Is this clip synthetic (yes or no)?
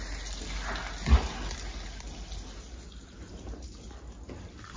no